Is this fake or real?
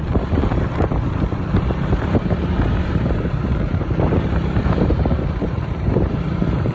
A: fake